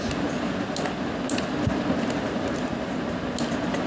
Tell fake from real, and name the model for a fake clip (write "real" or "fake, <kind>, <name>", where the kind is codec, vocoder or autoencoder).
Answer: real